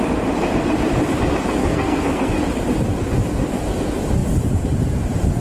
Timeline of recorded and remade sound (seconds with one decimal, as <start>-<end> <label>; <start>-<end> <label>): 0.0-1.6 recorded; 1.6-2.4 remade; 2.4-5.4 recorded